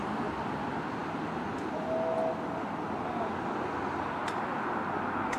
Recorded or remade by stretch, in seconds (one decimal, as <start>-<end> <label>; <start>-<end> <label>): 0.0-5.4 recorded